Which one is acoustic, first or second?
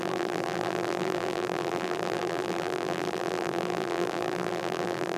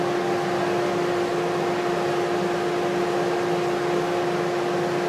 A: second